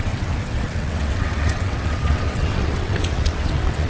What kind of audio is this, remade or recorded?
remade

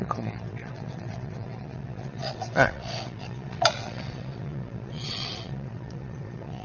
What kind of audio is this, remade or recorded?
remade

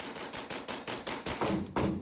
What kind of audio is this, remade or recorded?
recorded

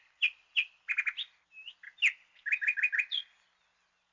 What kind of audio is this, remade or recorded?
recorded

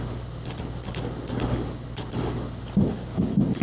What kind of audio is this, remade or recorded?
remade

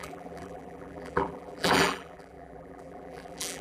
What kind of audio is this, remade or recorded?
remade